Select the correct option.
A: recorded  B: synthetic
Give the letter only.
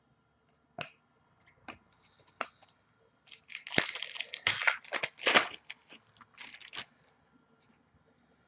A